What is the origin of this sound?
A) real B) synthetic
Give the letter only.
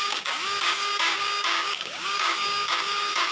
B